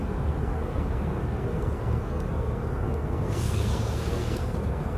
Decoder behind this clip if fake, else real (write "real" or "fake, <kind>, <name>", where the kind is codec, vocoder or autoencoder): fake, codec, SNAC